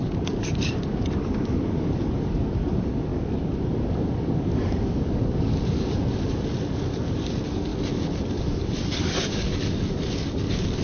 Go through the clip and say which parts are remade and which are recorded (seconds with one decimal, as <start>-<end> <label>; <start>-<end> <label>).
0.0-7.7 remade; 7.7-8.3 recorded; 8.3-10.8 remade